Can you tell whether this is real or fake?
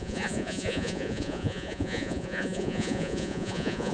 fake